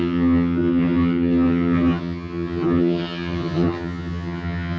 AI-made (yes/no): yes